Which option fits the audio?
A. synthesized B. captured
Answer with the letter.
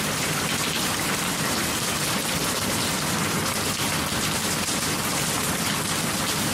B